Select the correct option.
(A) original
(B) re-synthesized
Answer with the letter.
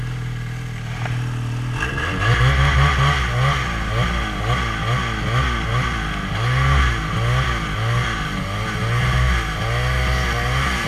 A